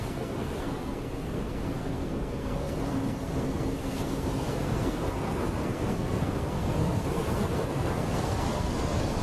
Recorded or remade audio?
remade